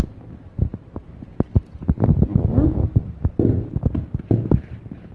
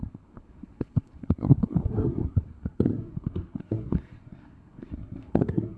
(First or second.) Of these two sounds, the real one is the first